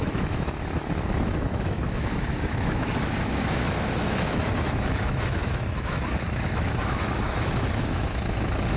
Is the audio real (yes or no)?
no